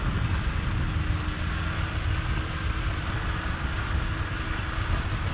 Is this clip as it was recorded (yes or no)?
yes